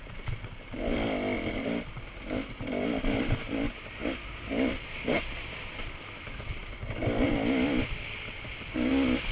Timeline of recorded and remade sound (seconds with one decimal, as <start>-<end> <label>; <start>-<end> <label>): 0.0-9.3 recorded